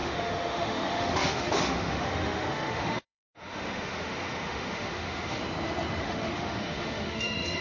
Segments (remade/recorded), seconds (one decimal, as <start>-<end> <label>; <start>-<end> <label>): 0.0-5.4 remade; 5.4-6.0 recorded; 6.0-7.6 remade